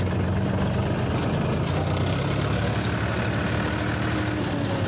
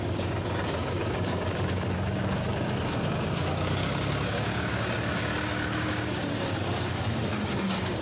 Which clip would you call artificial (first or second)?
second